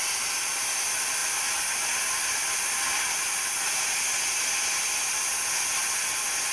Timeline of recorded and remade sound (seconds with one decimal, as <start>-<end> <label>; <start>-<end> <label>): 0.0-6.5 recorded